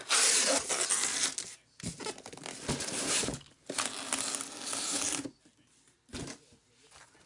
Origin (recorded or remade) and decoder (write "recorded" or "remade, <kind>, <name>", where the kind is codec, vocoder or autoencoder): recorded